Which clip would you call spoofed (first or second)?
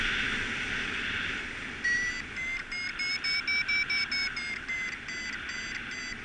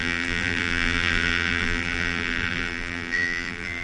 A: second